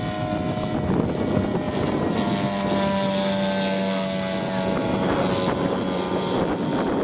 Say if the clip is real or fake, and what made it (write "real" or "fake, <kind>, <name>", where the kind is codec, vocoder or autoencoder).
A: real